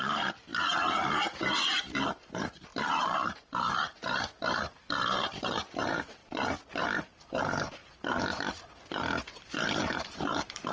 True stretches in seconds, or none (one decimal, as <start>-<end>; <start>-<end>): 0.5-1.1; 6.2-6.8